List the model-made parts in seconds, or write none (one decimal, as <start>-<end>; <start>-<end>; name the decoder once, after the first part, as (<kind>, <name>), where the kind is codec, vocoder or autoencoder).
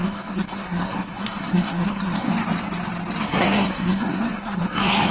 0.0-2.3 (codec, SNAC); 3.2-5.1